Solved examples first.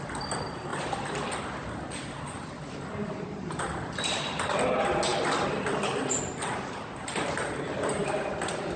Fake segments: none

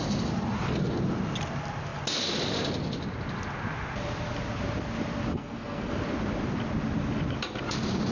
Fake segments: 5.3-5.9 (codec, SNAC)

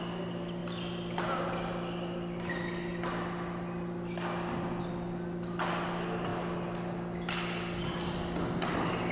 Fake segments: none

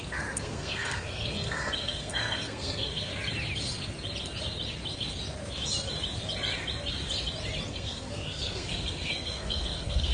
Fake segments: 0.0-3.1 (codec, SNAC); 7.7-10.1

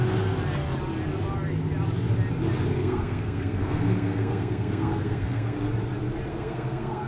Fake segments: 2.8-5.6 (codec, SNAC); 6.3-7.1